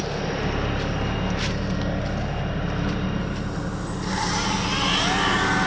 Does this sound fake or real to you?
real